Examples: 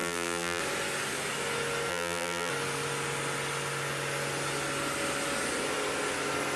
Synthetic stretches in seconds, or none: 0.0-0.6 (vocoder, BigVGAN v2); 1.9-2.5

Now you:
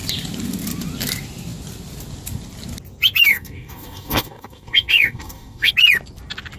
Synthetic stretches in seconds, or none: 3.3-5.7 (codec, DAC)